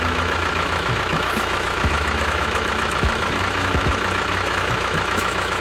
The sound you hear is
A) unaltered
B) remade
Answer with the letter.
B